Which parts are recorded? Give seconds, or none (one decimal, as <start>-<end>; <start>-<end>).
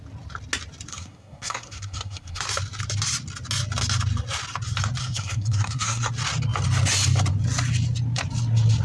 0.0-0.9; 2.4-5.0; 6.1-8.8